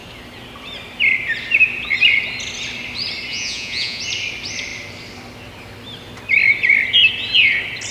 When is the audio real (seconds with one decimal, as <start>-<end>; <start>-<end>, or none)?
0.0-3.3; 4.0-7.9